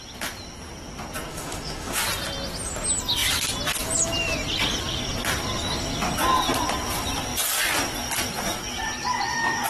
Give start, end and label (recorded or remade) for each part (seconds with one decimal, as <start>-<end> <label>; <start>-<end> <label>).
0.0-1.3 recorded; 1.3-2.0 remade; 2.0-9.7 recorded